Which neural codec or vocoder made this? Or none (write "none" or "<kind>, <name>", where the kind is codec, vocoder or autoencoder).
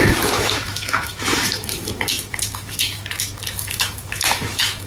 autoencoder, DAC-VAE